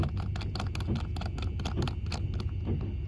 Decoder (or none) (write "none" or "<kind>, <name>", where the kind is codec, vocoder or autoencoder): none